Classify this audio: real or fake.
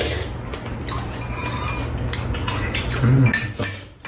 real